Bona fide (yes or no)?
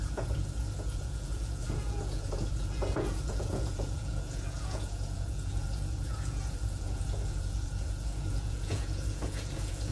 no